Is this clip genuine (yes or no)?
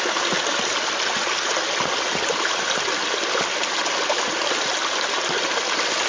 yes